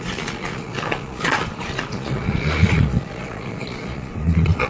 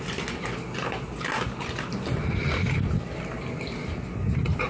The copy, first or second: first